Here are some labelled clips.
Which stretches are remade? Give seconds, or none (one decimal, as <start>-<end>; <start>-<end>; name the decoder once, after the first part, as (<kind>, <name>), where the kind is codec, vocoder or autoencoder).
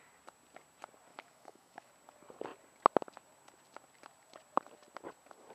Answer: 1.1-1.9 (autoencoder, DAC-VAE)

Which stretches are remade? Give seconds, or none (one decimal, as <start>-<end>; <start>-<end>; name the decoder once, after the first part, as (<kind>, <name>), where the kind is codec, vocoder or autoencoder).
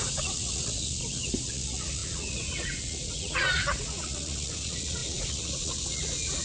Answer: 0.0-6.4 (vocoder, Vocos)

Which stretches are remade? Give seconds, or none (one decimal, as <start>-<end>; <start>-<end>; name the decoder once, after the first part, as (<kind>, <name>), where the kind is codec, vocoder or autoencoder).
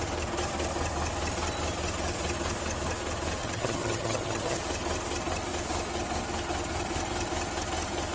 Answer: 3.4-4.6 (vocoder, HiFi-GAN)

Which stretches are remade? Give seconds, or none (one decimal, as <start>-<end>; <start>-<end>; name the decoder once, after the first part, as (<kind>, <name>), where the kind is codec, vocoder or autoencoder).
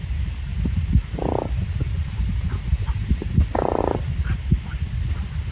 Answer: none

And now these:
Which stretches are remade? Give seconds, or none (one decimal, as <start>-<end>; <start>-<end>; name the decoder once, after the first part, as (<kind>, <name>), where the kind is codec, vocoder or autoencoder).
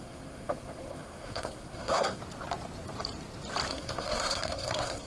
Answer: 0.0-2.2 (codec, SNAC); 3.7-5.1